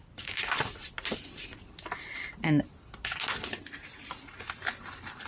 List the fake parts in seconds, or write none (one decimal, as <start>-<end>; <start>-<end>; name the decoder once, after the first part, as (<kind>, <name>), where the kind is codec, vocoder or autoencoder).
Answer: none